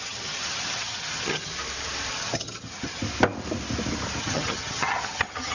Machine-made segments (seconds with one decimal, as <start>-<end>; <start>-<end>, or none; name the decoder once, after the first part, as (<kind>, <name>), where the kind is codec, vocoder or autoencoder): 0.0-1.5 (vocoder, HiFi-GAN); 2.1-3.0; 4.2-5.5